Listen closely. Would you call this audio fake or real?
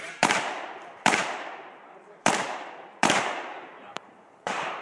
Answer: fake